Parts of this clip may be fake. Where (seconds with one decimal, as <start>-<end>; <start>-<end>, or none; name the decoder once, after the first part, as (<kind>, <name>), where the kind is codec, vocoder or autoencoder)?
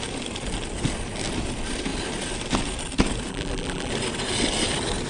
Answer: 3.3-3.9 (vocoder, BigVGAN v2)